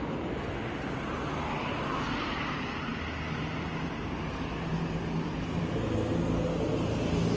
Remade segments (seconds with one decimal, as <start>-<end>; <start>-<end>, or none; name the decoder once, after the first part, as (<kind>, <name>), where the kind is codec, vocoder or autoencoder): none